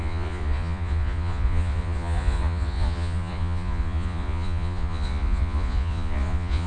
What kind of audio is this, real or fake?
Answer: fake